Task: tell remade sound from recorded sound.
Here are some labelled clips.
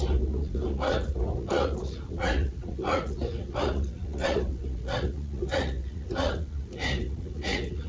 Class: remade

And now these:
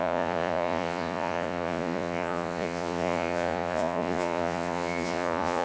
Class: remade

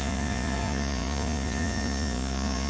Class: remade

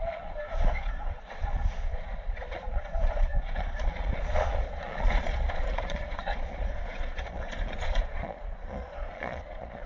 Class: remade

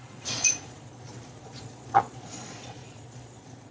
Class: remade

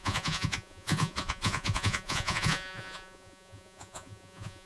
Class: remade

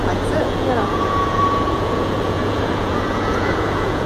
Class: remade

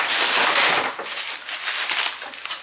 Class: recorded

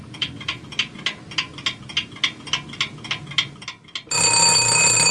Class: recorded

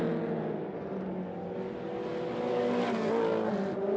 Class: recorded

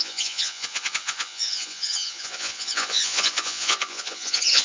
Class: remade